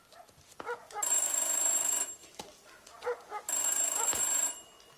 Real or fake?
real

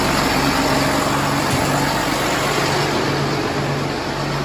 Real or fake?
real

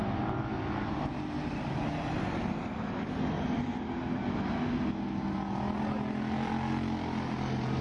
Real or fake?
real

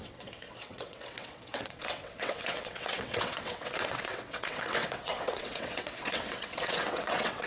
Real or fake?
fake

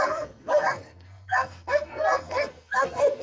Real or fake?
fake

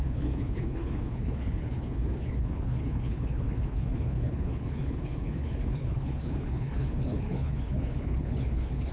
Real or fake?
fake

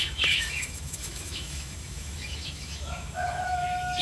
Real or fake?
fake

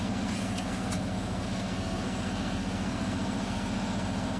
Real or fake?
fake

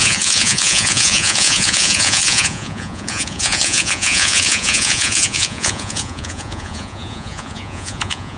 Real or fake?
fake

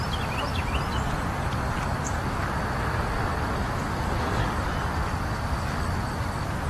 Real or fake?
real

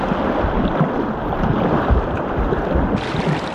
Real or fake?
real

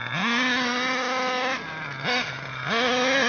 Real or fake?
real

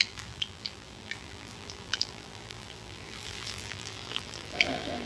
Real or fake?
fake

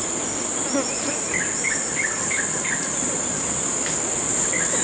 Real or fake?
real